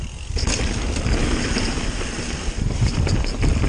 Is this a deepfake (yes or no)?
no